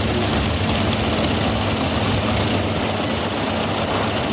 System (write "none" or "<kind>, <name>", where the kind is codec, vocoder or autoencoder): none